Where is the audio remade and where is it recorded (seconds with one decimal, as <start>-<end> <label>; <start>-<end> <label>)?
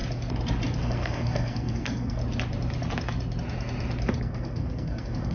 0.0-0.8 recorded; 0.8-2.2 remade; 2.2-4.2 recorded; 4.2-5.3 remade